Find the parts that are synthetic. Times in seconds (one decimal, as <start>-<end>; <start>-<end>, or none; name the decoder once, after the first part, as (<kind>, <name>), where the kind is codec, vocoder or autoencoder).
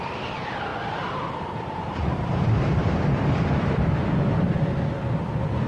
0.0-4.0 (vocoder, BigVGAN v2); 5.1-5.7